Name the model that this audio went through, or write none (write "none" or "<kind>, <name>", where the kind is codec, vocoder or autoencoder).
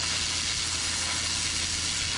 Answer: none